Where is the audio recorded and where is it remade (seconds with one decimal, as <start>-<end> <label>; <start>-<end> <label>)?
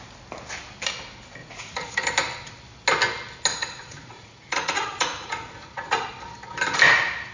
0.0-1.4 recorded; 1.4-1.9 remade; 1.9-3.5 recorded; 3.5-6.1 remade; 6.1-7.3 recorded